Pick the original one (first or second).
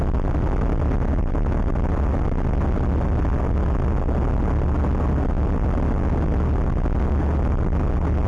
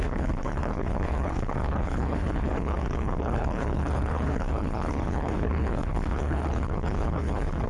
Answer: first